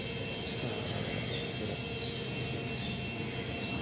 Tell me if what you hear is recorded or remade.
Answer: recorded